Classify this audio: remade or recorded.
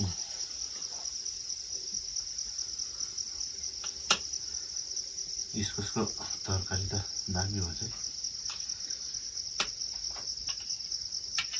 recorded